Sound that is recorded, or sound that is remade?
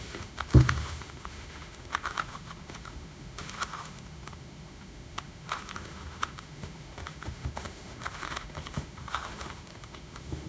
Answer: remade